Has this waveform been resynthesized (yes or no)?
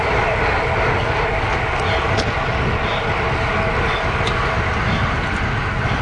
no